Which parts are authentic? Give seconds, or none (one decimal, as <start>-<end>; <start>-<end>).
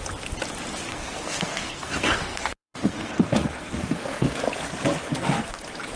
0.0-0.9; 4.4-5.0; 5.6-6.0